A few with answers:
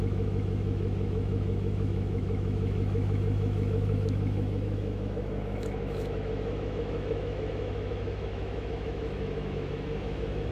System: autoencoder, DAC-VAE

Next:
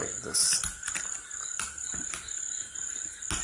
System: none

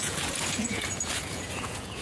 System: vocoder, Vocos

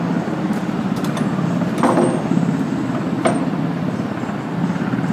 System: none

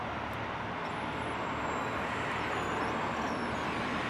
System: none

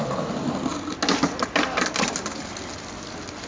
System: none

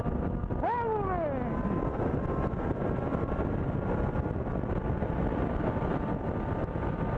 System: none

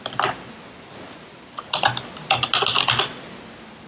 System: none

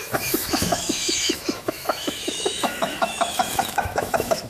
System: autoencoder, DAC-VAE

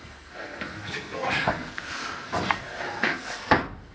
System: codec, SNAC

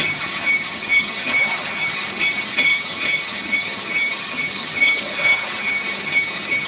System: vocoder, HiFi-GAN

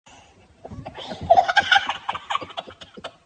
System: none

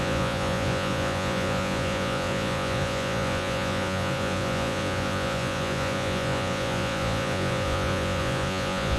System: vocoder, Vocos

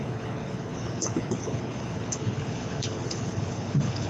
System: codec, HILCodec